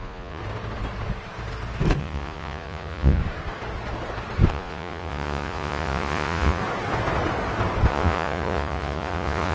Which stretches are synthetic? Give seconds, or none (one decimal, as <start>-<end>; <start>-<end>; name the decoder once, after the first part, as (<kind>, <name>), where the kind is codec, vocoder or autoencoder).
0.0-0.4 (vocoder, Vocos); 2.0-3.2; 4.5-6.6; 7.9-9.5